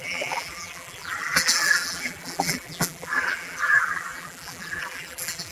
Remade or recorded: remade